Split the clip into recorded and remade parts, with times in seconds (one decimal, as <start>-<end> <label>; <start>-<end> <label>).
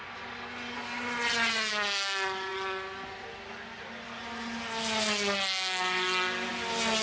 0.0-7.0 recorded